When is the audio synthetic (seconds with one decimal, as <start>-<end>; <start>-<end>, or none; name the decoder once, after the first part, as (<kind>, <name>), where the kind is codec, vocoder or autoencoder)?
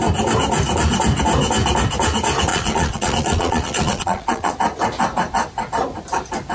2.5-4.5 (vocoder, Vocos)